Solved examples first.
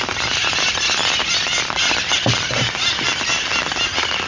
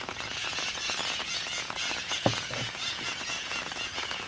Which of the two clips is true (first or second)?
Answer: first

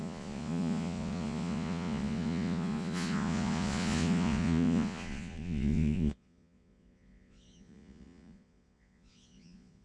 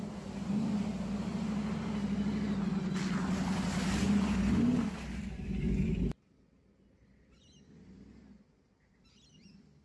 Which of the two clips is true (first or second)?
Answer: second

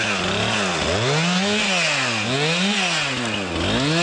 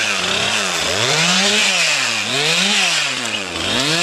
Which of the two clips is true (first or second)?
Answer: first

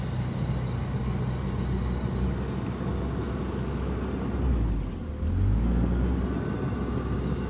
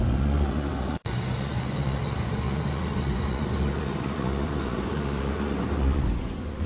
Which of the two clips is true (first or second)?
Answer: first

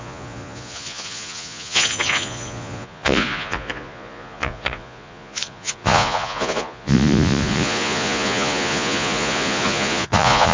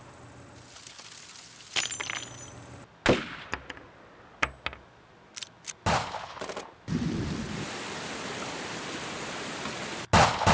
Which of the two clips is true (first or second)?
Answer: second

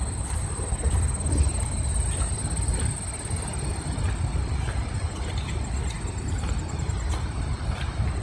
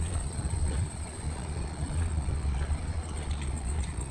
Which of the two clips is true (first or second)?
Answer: first